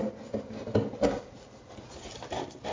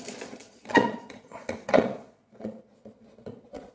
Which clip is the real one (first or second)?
first